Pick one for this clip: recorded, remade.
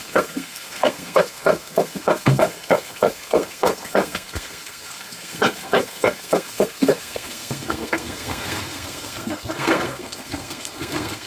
remade